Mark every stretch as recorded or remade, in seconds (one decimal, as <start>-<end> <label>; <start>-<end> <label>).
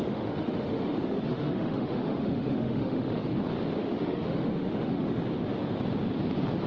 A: 0.0-3.3 remade; 3.3-3.8 recorded; 3.8-5.2 remade; 5.2-6.7 recorded